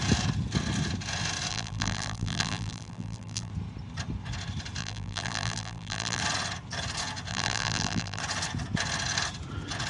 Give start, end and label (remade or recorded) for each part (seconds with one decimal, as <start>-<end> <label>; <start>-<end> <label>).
0.0-1.5 recorded; 1.5-3.5 remade; 3.5-4.8 recorded; 4.8-6.2 remade; 6.2-7.3 recorded; 7.3-8.2 remade; 8.2-9.9 recorded